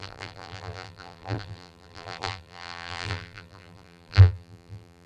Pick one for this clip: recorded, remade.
remade